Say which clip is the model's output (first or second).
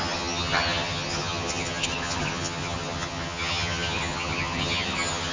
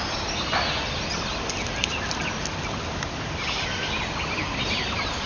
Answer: first